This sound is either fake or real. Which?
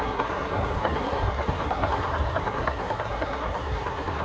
fake